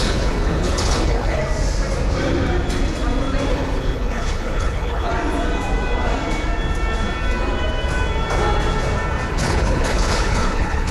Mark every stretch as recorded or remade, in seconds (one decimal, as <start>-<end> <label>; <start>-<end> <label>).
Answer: 0.0-1.4 remade; 1.4-3.5 recorded; 3.5-5.1 remade; 5.1-9.3 recorded; 9.3-10.9 remade